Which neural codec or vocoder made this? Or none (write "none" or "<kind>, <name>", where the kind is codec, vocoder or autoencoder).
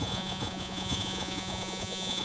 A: vocoder, Vocos